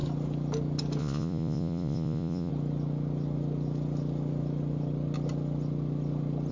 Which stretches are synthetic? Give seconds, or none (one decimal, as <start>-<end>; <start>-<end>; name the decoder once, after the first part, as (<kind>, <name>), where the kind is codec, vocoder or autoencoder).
1.0-2.5 (vocoder, Vocos)